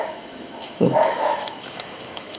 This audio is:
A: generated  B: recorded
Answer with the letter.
A